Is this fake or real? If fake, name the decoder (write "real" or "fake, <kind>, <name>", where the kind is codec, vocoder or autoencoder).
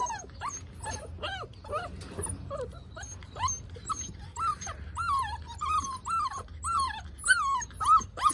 real